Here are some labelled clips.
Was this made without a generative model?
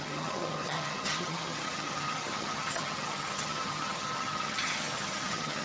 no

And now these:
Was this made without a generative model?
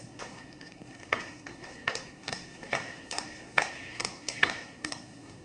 no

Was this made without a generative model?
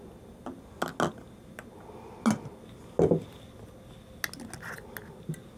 yes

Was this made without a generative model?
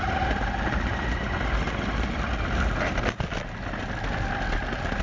yes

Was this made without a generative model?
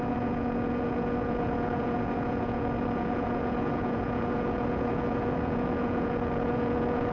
no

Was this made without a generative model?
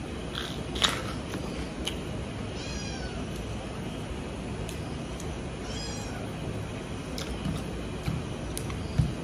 yes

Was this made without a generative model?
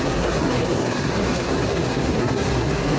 no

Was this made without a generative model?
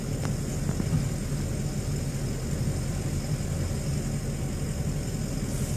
yes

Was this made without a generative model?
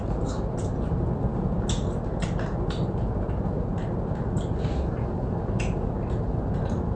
yes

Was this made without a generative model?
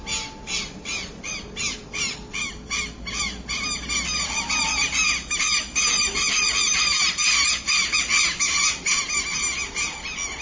yes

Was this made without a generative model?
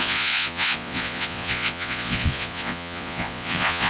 no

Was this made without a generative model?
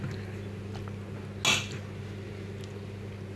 yes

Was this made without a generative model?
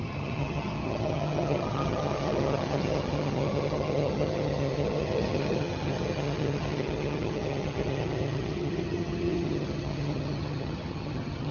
no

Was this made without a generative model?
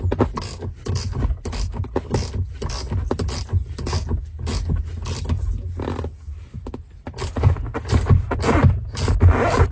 yes